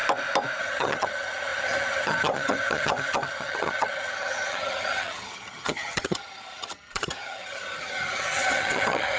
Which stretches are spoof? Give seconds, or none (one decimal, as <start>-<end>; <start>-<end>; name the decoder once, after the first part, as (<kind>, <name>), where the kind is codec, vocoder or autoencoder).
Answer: 0.6-9.2 (vocoder, HiFi-GAN)